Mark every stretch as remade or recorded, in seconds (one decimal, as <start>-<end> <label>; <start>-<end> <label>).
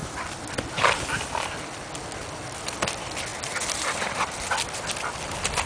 0.0-5.7 recorded